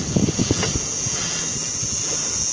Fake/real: fake